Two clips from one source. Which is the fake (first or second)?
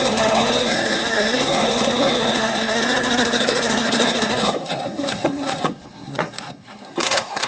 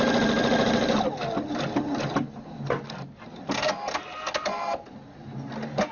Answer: first